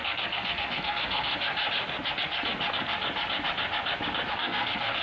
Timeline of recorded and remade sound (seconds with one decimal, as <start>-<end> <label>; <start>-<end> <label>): 0.0-1.3 remade; 1.3-4.3 recorded; 4.3-5.0 remade